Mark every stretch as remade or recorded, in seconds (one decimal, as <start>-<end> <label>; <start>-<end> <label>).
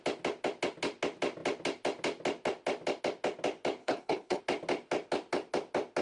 0.0-3.8 recorded; 3.8-4.4 remade; 4.4-6.0 recorded